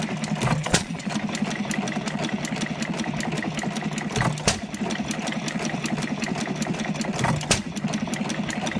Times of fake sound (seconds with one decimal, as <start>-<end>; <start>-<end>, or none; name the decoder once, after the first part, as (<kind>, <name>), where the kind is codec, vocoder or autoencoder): 0.6-1.1 (vocoder, Vocos)